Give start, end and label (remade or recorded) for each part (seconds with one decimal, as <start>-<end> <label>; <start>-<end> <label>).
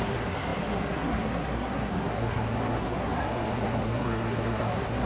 0.0-5.1 remade